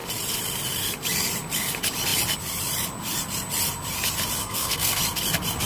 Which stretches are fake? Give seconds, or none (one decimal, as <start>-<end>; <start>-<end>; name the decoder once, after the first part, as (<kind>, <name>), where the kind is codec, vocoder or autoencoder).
4.4-5.0 (codec, SNAC)